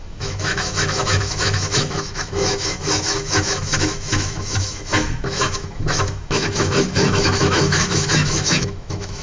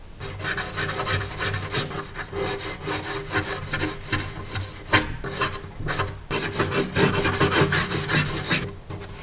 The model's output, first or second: first